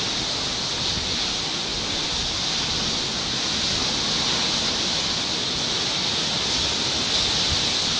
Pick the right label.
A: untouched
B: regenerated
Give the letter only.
A